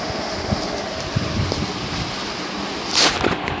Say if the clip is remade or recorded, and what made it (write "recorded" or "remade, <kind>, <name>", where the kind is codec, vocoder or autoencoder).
recorded